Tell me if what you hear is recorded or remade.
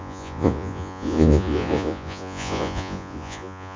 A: remade